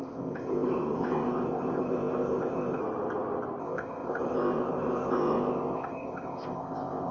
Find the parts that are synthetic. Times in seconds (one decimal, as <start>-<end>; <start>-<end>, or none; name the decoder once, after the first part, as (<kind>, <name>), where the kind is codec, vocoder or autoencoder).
0.0-2.8 (codec, ZipCodec); 3.6-7.1